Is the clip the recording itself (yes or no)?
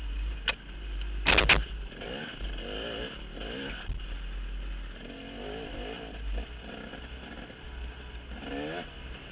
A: yes